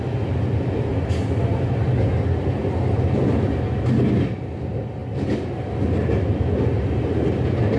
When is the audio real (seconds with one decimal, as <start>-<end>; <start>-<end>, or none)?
0.0-7.8